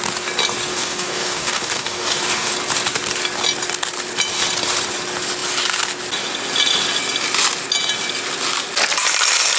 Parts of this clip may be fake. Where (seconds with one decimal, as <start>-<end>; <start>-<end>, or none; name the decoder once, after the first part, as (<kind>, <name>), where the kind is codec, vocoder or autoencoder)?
0.7-2.5 (codec, DAC)